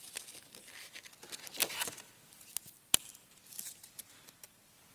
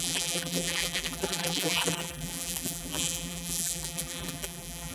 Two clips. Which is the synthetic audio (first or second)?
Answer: second